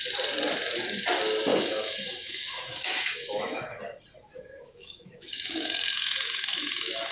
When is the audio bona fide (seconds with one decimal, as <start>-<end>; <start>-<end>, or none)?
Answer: 0.0-1.5; 3.8-4.3